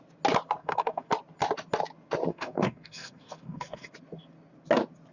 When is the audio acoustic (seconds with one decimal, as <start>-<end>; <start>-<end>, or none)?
0.0-0.6; 1.1-2.3; 3.9-5.1